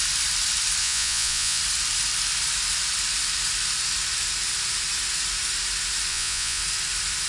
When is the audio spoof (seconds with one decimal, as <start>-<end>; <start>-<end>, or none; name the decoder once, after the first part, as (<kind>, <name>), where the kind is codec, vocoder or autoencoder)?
0.8-1.6 (vocoder, Vocos); 6.1-6.6